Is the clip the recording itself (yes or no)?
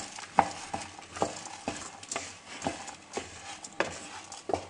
yes